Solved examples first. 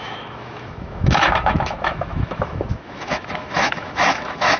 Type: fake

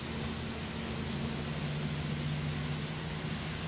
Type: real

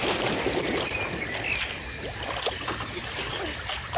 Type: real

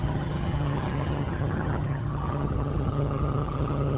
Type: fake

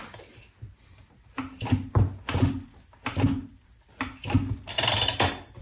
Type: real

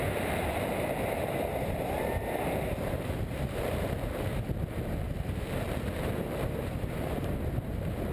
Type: fake